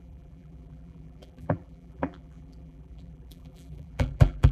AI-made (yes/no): yes